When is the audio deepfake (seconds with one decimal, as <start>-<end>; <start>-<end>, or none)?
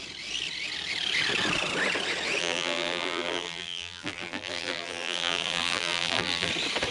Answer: 2.4-6.5